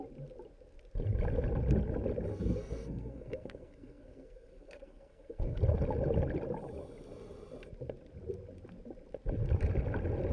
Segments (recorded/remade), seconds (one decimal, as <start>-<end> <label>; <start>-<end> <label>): 0.0-2.3 recorded; 2.3-5.6 remade; 5.6-10.3 recorded